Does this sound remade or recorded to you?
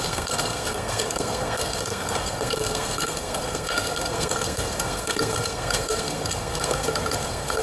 remade